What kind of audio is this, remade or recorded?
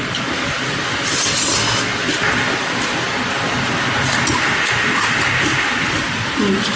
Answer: recorded